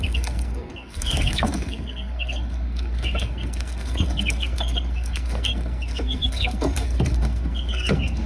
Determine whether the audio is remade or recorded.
remade